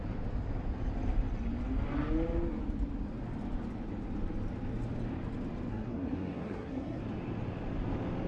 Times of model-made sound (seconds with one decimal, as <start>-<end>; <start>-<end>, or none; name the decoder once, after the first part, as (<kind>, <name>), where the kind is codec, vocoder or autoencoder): 5.7-7.0 (codec, SNAC)